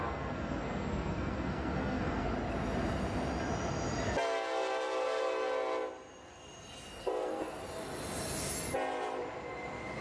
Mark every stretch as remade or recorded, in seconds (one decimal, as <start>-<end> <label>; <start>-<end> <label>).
0.0-2.3 remade; 2.3-7.0 recorded; 7.0-7.6 remade; 7.6-10.0 recorded